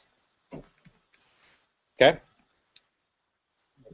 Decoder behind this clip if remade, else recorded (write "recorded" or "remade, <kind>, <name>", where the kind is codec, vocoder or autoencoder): recorded